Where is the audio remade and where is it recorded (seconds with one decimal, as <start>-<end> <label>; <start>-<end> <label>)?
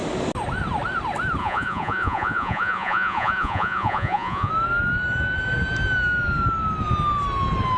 0.0-1.4 recorded; 1.4-4.5 remade; 4.5-7.8 recorded